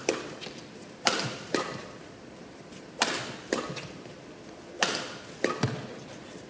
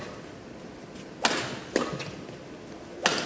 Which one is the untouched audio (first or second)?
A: second